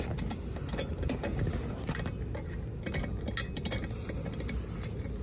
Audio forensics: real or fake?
real